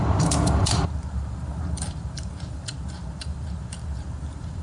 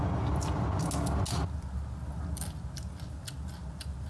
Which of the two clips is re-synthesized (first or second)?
first